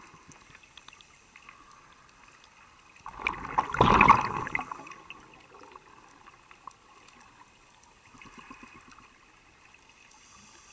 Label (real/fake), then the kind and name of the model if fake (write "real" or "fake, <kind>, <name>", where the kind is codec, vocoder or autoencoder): real